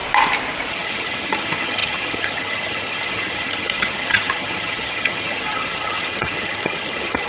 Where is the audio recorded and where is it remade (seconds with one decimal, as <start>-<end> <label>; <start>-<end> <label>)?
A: 0.0-0.7 recorded; 0.7-7.3 remade